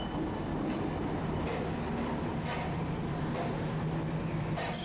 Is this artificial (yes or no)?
no